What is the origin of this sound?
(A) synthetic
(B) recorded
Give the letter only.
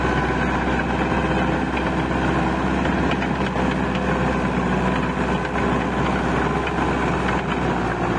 B